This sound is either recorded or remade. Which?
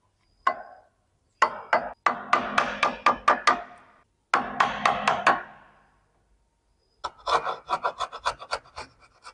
recorded